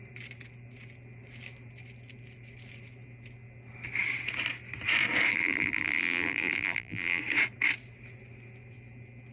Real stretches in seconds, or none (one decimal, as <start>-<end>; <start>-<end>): 0.0-5.3; 7.2-9.3